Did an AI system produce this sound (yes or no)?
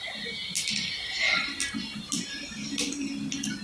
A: no